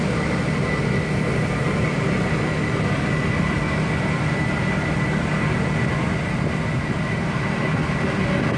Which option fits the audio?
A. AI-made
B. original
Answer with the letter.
B